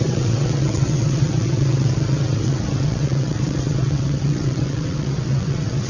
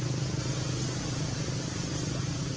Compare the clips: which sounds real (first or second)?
second